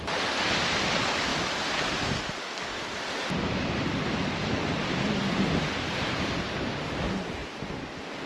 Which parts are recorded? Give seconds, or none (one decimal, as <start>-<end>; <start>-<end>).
0.0-8.3